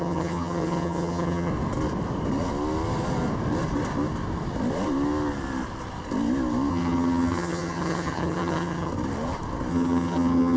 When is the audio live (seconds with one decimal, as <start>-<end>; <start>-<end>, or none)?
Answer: 1.5-6.7; 8.9-9.7

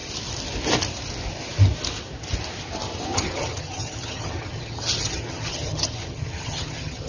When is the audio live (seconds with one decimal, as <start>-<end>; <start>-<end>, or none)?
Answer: 0.0-3.1